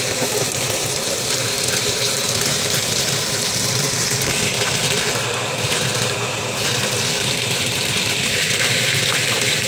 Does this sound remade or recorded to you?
remade